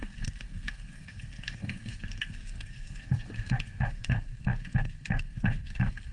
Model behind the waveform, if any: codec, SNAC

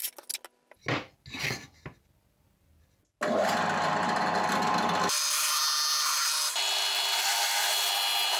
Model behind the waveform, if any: none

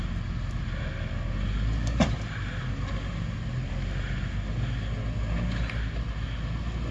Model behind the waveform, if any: none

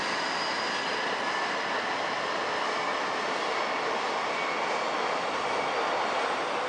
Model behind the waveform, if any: none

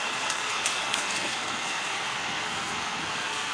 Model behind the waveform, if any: codec, SNAC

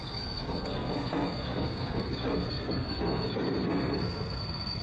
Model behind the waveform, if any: codec, SNAC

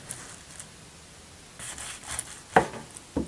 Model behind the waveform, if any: none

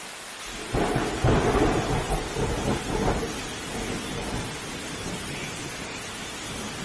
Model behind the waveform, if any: none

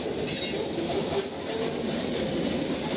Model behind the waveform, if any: none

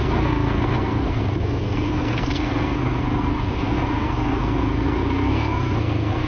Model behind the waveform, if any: codec, SNAC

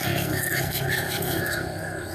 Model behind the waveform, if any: codec, SNAC